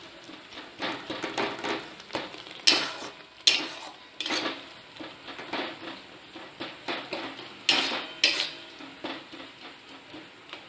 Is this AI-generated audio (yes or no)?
no